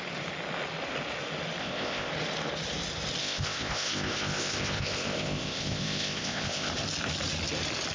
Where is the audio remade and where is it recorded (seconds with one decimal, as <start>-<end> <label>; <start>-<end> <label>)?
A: 0.0-1.6 recorded; 1.6-2.1 remade; 2.1-3.2 recorded; 3.2-6.7 remade; 6.7-7.9 recorded